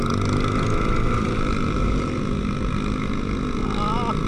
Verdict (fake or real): real